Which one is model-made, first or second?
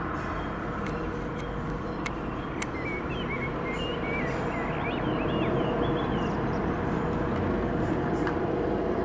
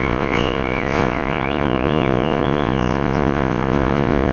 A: second